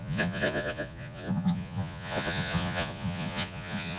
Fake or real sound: fake